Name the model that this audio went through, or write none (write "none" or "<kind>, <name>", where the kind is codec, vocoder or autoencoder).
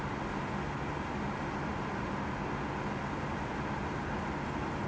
none